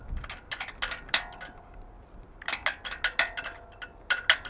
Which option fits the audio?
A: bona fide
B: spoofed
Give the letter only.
A